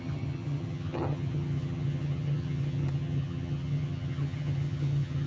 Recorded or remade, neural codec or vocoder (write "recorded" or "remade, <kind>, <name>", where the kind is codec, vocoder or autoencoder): remade, vocoder, HiFi-GAN